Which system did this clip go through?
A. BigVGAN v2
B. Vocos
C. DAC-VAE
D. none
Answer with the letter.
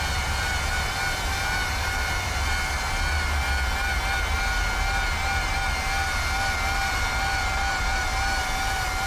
D